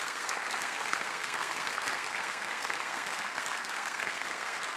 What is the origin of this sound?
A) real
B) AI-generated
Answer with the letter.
B